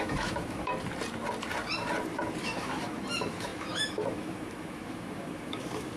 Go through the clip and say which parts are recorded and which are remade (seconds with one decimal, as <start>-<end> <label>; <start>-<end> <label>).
0.0-0.7 remade; 0.7-2.4 recorded; 2.4-6.0 remade